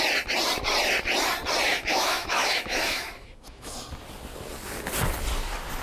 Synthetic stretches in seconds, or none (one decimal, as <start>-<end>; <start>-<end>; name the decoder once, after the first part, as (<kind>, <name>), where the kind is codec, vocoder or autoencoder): 1.7-3.7 (autoencoder, DAC-VAE)